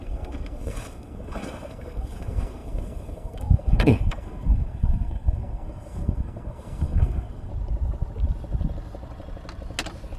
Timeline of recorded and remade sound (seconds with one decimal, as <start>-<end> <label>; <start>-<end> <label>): 0.0-7.5 remade; 7.5-10.2 recorded